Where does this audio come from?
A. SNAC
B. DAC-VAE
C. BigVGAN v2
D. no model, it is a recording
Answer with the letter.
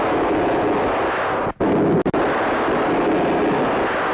D